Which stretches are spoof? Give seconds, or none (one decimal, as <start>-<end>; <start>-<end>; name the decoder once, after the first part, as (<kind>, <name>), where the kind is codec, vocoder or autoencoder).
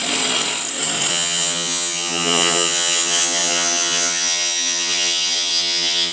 1.1-6.1 (vocoder, HiFi-GAN)